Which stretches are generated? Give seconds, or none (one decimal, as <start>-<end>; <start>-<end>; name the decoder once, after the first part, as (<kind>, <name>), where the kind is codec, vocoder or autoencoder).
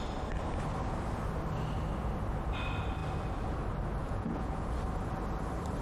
4.0-4.7 (vocoder, Vocos)